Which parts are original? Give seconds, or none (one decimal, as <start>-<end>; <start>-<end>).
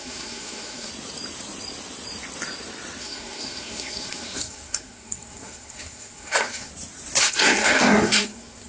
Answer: 0.9-3.0; 6.7-7.2